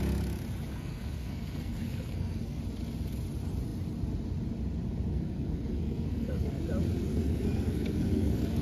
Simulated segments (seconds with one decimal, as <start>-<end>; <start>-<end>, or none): 0.7-2.6; 5.1-6.6; 7.1-8.6